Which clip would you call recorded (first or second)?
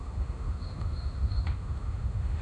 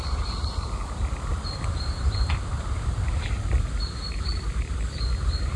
second